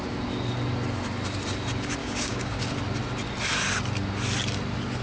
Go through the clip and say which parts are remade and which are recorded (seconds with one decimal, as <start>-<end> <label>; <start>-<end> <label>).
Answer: 0.0-2.0 recorded; 2.0-2.6 remade; 2.6-5.0 recorded